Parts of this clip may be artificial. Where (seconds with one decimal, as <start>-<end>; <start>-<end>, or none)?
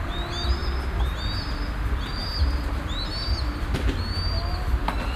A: none